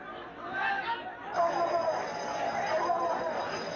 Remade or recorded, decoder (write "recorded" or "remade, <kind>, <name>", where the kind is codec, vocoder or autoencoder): recorded